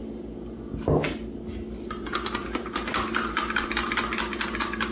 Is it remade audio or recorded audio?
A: recorded